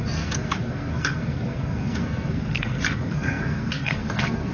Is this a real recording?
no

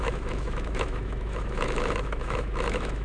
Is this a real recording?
no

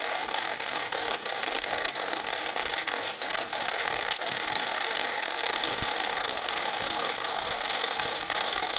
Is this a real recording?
no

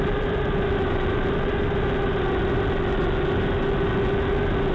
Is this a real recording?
yes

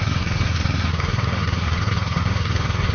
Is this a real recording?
no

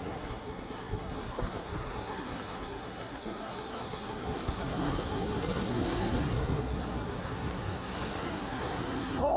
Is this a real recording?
no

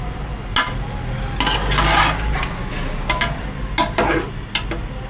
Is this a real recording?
yes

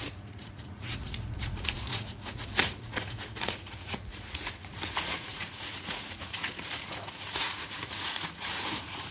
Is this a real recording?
no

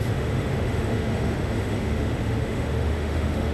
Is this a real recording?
no